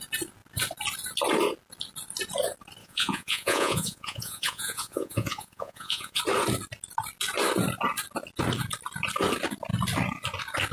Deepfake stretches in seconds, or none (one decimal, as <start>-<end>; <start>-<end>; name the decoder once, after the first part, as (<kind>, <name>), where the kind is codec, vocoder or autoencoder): 2.8-6.2 (vocoder, Vocos)